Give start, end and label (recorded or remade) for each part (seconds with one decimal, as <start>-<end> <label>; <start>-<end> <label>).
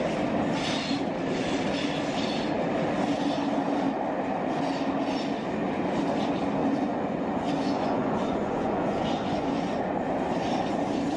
0.0-6.6 recorded; 6.6-9.8 remade; 9.8-11.2 recorded